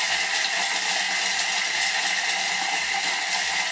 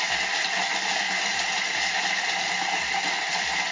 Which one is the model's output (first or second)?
second